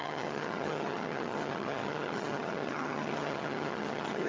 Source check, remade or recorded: remade